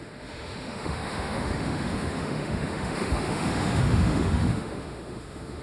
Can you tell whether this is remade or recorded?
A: remade